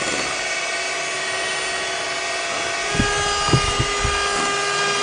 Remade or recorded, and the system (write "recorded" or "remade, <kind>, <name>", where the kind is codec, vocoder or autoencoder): recorded